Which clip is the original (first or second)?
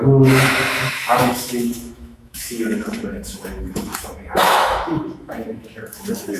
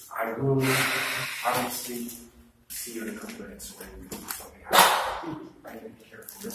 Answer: second